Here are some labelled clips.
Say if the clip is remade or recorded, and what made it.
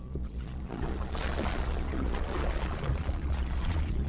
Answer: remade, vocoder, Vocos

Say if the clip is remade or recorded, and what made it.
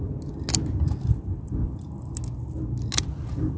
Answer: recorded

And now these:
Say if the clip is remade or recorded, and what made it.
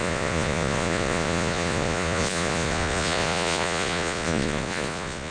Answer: remade, vocoder, Vocos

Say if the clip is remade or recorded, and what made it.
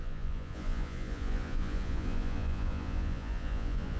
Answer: remade, vocoder, Vocos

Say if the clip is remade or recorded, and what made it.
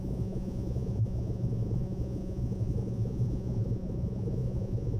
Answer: remade, vocoder, Vocos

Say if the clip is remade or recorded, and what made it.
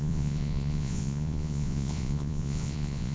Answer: remade, vocoder, Vocos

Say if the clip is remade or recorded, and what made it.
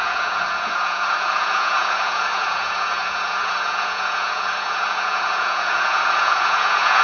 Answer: remade, vocoder, Vocos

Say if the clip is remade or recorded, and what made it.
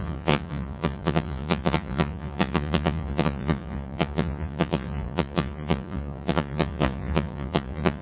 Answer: remade, vocoder, Vocos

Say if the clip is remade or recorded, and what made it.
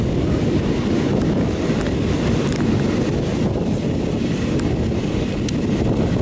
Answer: recorded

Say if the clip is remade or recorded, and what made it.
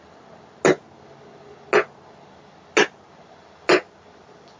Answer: recorded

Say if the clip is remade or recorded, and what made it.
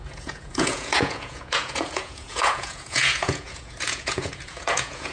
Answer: remade, vocoder, Vocos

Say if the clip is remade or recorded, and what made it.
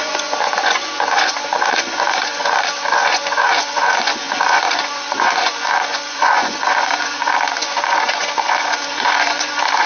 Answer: remade, vocoder, Vocos